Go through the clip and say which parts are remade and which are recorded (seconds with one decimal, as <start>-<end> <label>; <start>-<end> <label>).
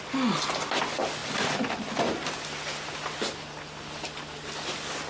0.0-5.1 recorded